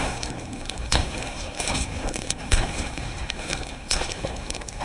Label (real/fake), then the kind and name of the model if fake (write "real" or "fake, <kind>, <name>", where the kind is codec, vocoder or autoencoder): fake, codec, SNAC